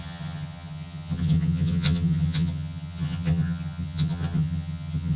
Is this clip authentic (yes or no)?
no